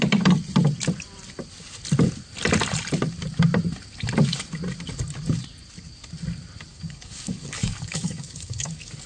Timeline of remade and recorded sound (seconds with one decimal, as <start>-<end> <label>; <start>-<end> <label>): 0.0-6.7 recorded; 6.7-9.1 remade